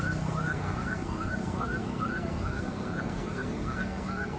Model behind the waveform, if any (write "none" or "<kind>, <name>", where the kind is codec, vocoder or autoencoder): codec, SNAC